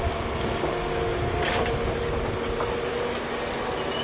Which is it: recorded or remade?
recorded